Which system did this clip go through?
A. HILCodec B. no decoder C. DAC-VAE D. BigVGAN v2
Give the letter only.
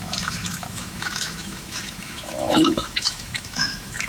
C